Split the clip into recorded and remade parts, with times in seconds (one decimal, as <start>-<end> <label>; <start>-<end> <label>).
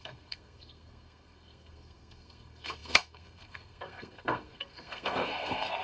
0.0-5.8 remade